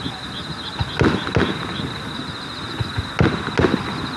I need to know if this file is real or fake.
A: real